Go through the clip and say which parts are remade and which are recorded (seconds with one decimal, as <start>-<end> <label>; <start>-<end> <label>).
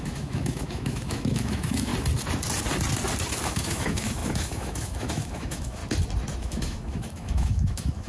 0.0-1.9 remade; 1.9-3.4 recorded; 3.4-5.8 remade; 5.8-6.4 recorded; 6.4-8.1 remade